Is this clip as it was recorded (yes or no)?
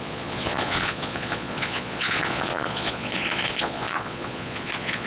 no